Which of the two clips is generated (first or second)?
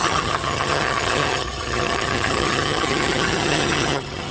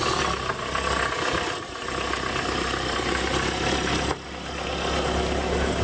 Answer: first